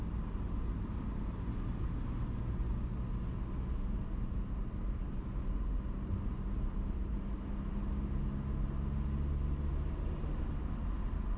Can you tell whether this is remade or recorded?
recorded